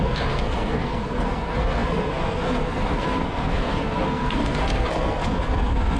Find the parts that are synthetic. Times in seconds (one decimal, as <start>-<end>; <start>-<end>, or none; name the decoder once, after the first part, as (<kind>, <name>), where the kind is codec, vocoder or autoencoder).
0.0-6.0 (codec, SNAC)

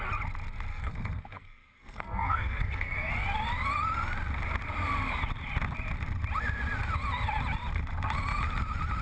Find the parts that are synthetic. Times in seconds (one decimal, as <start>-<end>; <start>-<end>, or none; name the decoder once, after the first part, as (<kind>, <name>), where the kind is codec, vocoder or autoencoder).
0.7-3.1 (codec, SNAC)

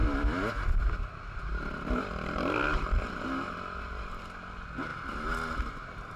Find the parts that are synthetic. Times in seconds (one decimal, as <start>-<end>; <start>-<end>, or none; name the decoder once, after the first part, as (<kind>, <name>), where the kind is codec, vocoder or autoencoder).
none